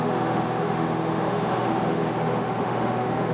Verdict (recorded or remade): remade